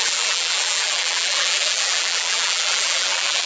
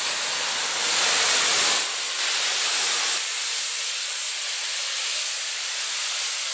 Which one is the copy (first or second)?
first